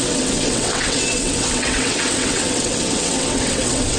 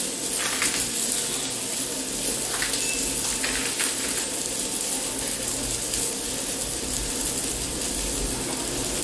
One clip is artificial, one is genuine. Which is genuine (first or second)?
second